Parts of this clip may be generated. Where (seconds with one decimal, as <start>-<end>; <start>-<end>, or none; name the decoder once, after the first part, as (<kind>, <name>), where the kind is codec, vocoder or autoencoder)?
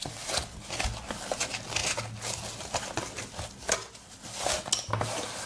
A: none